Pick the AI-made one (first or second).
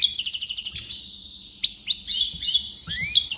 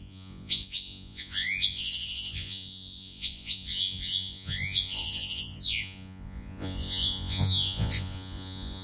second